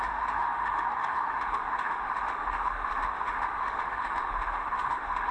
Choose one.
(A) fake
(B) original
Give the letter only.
A